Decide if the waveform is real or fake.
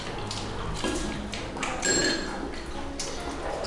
real